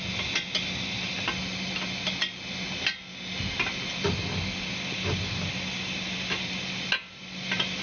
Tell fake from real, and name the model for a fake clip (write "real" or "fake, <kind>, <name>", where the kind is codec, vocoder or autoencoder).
real